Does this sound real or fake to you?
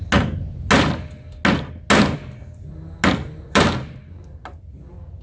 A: real